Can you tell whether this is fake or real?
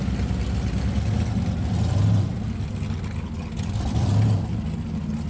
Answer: real